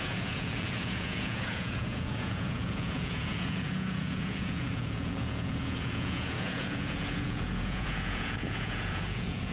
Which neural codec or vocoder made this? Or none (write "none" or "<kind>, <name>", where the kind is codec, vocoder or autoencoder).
vocoder, Vocos